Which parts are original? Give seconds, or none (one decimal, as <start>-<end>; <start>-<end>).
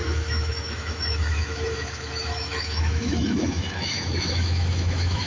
none